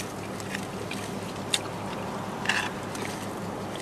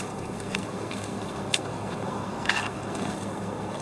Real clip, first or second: first